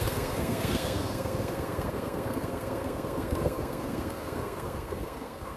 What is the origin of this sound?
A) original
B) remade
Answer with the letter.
B